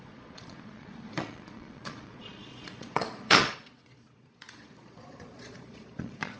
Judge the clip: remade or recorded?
remade